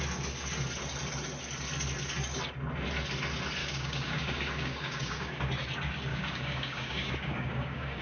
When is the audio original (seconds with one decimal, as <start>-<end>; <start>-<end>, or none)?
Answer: 0.0-3.6; 5.5-6.1